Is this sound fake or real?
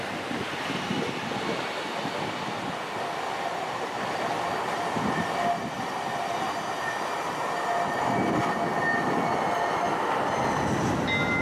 real